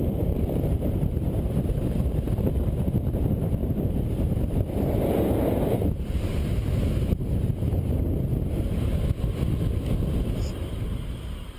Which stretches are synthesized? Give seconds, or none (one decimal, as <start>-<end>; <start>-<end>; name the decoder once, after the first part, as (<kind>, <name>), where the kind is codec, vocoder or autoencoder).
0.0-8.9 (vocoder, BigVGAN v2); 10.2-11.6

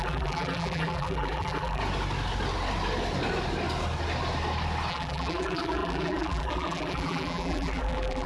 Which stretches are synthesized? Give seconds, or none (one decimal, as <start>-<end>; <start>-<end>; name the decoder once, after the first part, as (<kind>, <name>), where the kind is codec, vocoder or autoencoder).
0.0-1.8 (vocoder, BigVGAN v2); 4.9-8.3

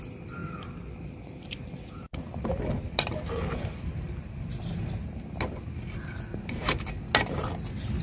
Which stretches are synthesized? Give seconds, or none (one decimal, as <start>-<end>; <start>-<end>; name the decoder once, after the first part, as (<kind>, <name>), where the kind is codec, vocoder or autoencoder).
0.0-6.6 (vocoder, BigVGAN v2); 7.6-8.0

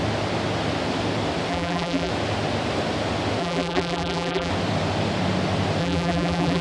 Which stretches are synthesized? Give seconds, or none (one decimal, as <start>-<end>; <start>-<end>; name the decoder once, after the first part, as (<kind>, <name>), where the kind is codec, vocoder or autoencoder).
1.5-2.1 (vocoder, BigVGAN v2); 3.4-4.5; 5.8-6.6

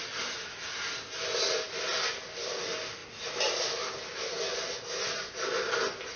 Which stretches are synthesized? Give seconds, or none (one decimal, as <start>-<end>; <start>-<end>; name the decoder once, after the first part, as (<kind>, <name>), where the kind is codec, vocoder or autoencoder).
none